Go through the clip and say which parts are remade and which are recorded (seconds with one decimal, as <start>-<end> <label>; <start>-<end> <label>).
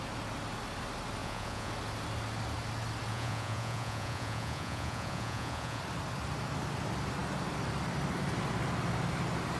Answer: 0.0-1.2 recorded; 1.2-1.7 remade; 1.7-3.1 recorded; 3.1-5.8 remade; 5.8-9.6 recorded